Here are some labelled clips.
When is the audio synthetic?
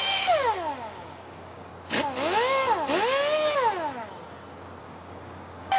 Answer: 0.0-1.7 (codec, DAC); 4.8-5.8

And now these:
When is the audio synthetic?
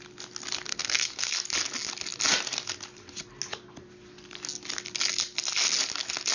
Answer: 0.7-1.3 (codec, SNAC)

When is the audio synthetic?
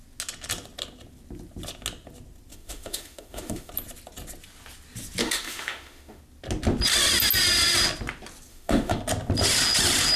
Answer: 2.5-3.7 (autoencoder, DAC-VAE); 5.2-6.2; 8.5-9.0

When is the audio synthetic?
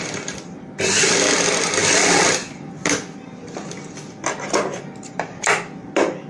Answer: none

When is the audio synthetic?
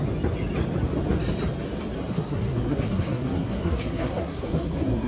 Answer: 2.1-5.1 (codec, SNAC)